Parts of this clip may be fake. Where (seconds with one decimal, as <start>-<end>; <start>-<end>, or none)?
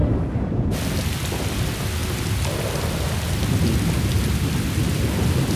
0.0-0.6